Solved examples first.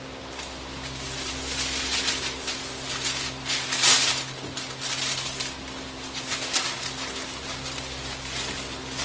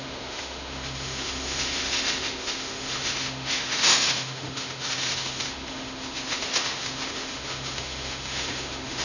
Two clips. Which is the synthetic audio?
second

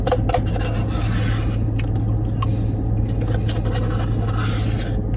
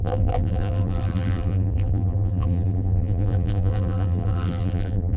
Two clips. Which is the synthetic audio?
second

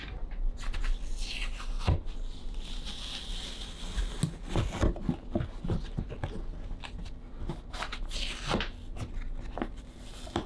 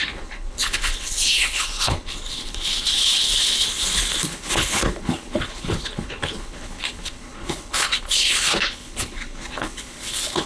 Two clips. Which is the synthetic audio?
second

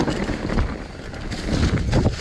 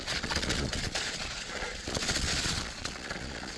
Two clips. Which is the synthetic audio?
second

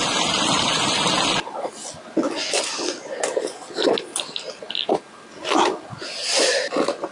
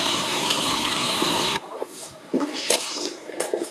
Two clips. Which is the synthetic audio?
second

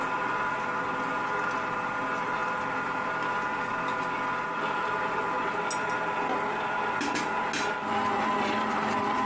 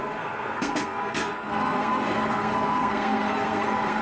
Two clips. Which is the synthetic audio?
second